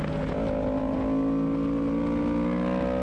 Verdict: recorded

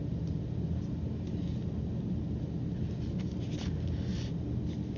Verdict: recorded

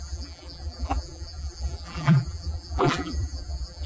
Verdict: remade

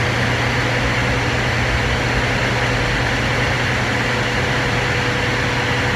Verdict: recorded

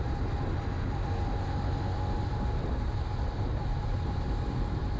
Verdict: recorded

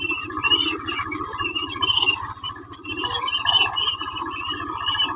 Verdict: recorded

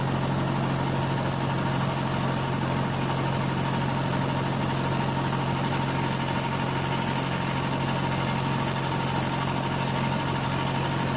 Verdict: recorded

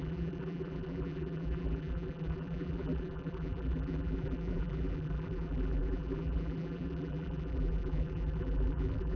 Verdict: remade